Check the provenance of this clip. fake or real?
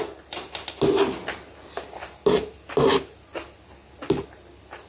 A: real